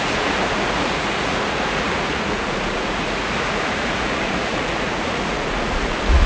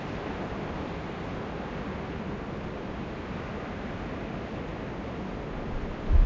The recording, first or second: second